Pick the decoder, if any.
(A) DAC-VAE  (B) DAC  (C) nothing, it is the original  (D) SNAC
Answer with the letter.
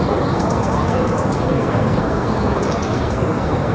D